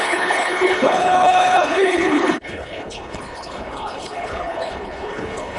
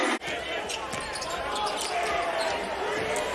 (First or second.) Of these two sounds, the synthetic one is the first